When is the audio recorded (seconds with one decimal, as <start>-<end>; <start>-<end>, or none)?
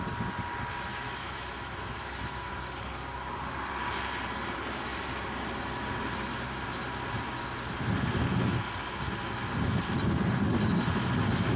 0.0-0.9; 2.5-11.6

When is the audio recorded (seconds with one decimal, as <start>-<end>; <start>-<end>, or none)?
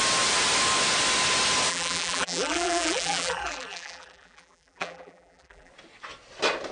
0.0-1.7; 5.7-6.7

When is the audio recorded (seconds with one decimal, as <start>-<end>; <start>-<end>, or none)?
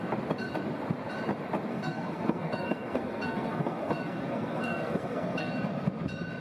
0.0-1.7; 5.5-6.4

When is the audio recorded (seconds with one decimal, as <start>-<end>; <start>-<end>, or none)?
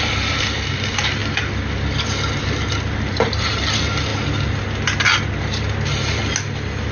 1.2-2.7; 4.1-5.4; 6.2-6.9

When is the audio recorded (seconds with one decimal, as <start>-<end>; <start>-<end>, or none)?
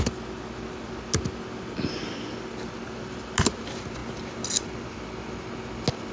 0.0-6.1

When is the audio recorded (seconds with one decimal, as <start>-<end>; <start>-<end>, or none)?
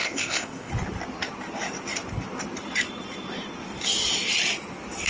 0.7-5.1